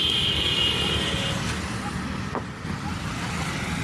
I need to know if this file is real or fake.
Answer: real